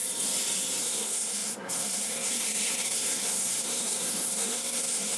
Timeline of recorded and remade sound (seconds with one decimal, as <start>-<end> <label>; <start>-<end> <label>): 0.0-0.8 recorded; 0.8-5.2 remade